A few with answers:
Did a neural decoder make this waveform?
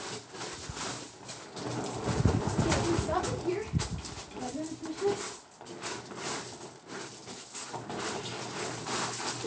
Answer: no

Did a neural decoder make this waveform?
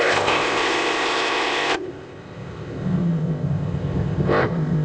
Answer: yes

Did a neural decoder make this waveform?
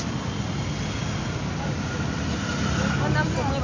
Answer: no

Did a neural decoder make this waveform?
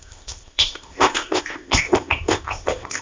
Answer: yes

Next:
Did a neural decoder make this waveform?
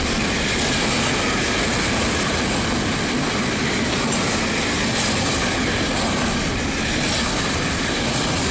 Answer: no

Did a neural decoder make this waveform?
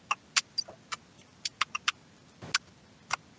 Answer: no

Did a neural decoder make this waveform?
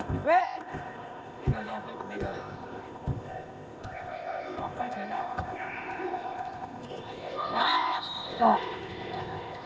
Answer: yes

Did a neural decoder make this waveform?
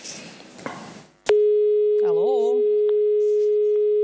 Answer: no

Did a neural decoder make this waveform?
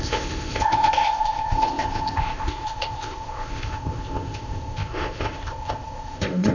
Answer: yes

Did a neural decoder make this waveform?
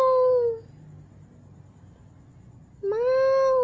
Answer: no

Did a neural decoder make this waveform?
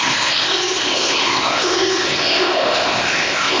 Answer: yes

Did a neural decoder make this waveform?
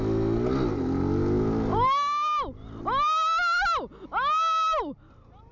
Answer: no